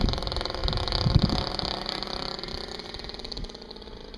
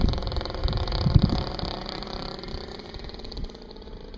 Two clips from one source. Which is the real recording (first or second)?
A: first